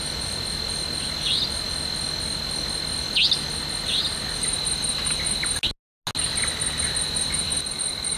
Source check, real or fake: real